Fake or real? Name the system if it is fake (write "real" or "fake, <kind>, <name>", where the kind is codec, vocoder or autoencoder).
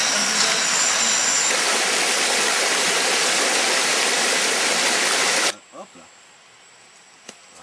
real